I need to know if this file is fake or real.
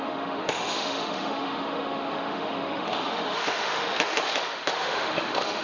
fake